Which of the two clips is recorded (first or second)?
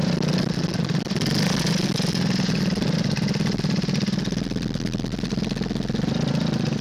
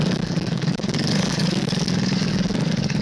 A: first